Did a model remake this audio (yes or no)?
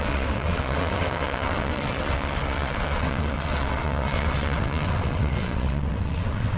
yes